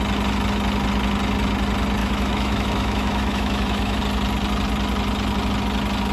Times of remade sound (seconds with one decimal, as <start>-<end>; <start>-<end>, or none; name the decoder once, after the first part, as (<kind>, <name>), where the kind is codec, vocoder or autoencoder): 2.0-4.0 (autoencoder, DAC-VAE)

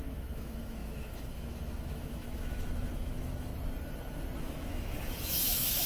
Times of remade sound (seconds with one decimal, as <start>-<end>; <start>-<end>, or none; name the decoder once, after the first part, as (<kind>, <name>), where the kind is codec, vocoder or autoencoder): 0.0-3.5 (autoencoder, DAC-VAE); 4.4-5.9

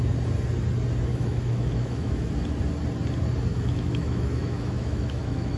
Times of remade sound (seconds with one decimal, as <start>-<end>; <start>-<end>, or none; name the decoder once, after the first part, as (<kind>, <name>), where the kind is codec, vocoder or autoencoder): 1.1-2.3 (autoencoder, DAC-VAE); 3.5-5.6

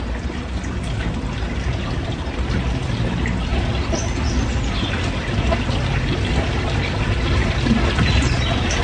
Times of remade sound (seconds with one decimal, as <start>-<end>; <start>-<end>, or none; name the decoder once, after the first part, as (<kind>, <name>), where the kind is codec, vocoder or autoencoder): none